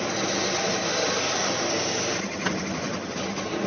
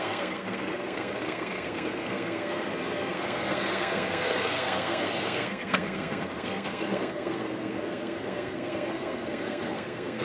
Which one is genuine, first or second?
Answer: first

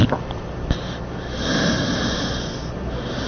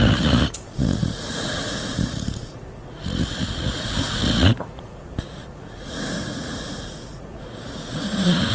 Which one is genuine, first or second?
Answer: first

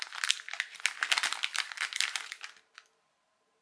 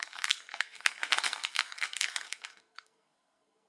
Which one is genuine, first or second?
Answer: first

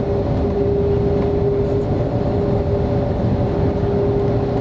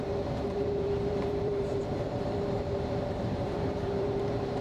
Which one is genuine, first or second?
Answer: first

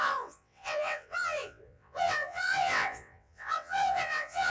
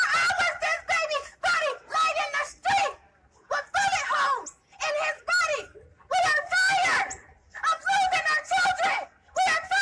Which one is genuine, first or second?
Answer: second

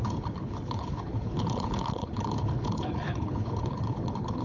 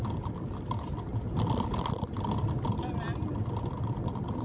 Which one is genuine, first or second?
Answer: second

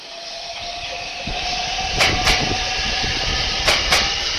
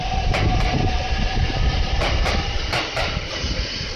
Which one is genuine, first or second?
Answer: first